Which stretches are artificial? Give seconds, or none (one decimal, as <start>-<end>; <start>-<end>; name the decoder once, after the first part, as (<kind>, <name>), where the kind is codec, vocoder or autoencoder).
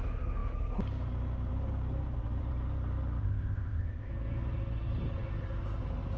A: 3.2-4.1 (codec, ZipCodec)